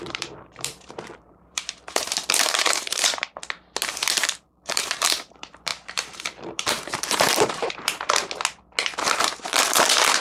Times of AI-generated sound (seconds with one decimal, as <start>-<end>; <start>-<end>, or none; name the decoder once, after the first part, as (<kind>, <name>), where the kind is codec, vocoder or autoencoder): 0.0-3.3 (vocoder, BigVGAN v2); 3.9-8.2; 8.8-10.2